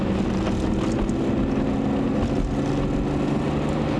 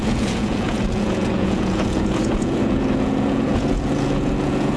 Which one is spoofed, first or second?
second